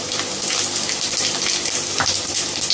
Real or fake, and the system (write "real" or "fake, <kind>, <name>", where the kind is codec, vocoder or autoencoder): real